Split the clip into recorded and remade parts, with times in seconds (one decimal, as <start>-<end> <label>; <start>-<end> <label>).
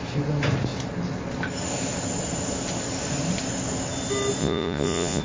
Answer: 0.0-4.4 recorded; 4.4-5.2 remade